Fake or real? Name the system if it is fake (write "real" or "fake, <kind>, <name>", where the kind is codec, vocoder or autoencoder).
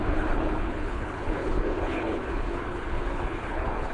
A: fake, codec, HILCodec